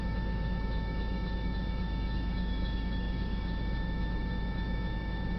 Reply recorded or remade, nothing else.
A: remade